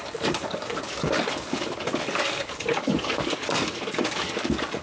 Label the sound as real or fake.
fake